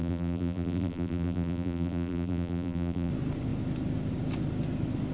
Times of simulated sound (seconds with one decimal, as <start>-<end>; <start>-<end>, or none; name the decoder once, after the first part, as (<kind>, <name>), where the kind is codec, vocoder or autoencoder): 0.0-3.1 (vocoder, BigVGAN v2)